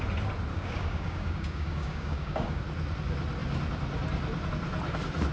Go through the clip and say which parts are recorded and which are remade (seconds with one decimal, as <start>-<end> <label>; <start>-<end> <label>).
0.0-0.5 recorded; 0.5-2.6 remade; 2.6-5.3 recorded